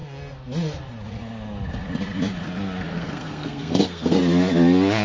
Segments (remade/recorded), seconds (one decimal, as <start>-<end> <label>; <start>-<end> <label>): 0.0-2.9 recorded; 2.9-4.2 remade; 4.2-5.0 recorded